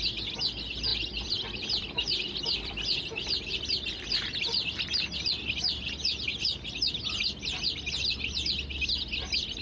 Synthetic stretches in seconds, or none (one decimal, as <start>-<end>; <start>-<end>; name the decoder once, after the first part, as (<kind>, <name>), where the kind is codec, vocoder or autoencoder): 0.9-5.2 (vocoder, BigVGAN v2)